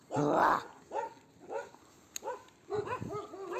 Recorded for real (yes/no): yes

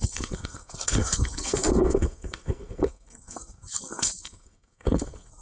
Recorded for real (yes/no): no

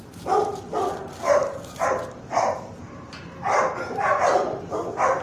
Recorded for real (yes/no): yes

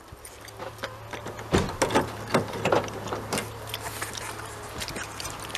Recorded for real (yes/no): yes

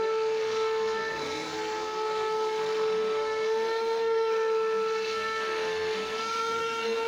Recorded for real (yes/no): no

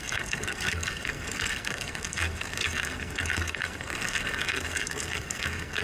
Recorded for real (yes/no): no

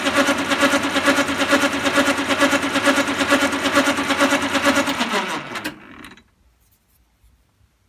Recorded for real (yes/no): yes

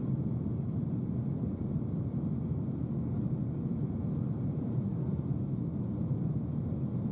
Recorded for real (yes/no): yes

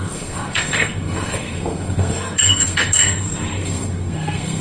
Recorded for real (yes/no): no